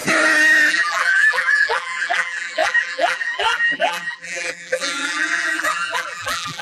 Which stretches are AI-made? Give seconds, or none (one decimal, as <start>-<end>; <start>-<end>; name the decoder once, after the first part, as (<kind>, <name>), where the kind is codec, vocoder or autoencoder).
0.7-6.6 (vocoder, BigVGAN v2)